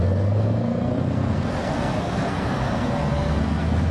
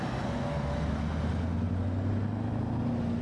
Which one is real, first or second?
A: second